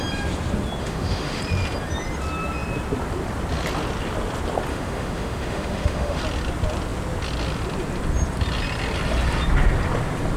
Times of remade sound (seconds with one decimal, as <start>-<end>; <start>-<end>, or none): 0.8-1.4; 4.7-6.2